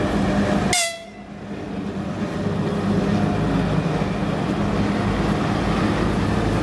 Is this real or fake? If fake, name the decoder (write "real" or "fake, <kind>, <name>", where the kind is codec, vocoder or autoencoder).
real